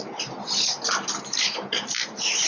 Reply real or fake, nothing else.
real